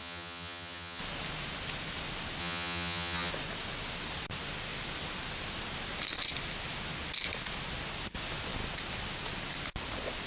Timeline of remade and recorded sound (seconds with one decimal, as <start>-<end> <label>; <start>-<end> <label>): 0.0-1.0 remade; 1.0-2.4 recorded; 2.4-3.3 remade; 3.3-10.3 recorded